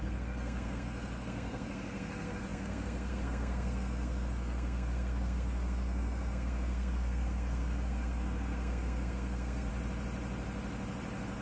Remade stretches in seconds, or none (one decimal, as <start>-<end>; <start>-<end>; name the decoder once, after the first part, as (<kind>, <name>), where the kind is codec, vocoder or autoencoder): 0.0-9.7 (codec, SNAC)